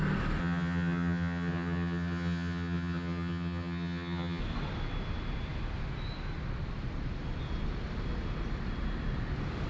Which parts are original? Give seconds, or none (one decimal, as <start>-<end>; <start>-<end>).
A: 0.0-0.4; 4.4-9.7